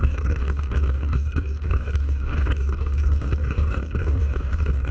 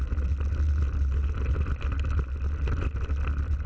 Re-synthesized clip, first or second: first